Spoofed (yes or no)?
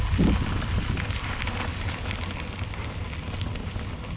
no